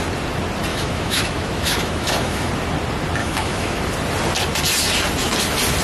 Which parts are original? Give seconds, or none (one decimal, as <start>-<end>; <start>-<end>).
0.0-0.7; 2.5-3.2; 3.8-5.8